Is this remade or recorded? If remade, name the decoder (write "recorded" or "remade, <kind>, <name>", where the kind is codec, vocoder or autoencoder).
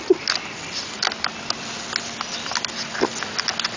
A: recorded